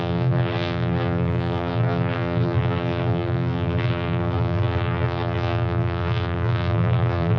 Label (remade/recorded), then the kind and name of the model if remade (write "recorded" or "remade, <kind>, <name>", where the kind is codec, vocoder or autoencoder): remade, vocoder, BigVGAN v2